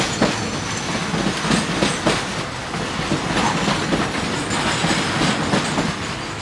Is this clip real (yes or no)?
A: yes